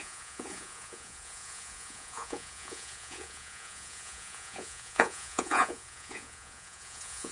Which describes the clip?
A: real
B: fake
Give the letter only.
B